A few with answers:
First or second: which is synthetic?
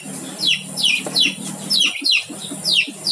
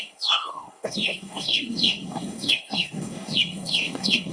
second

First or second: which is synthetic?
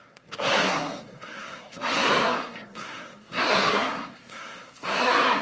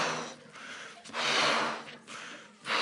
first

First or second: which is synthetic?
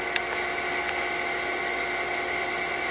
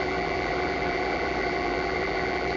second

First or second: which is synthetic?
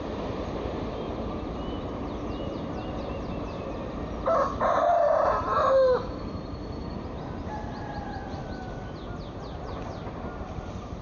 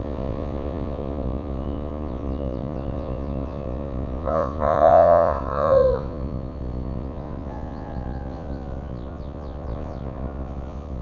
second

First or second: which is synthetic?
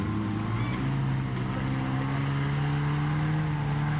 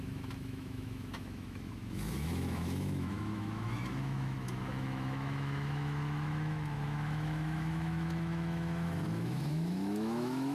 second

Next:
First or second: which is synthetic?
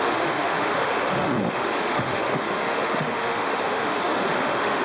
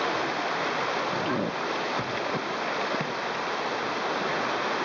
first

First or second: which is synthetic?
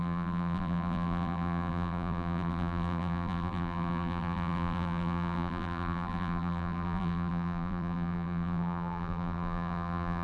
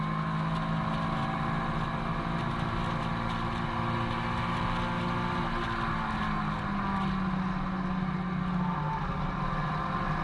first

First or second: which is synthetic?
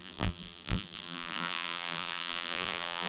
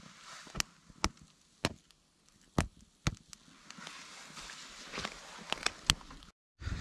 first